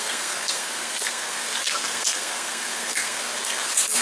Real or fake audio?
fake